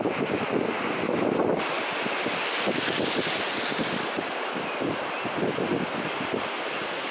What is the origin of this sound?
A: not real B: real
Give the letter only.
B